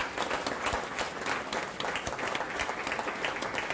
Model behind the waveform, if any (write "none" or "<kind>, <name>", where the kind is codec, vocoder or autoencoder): none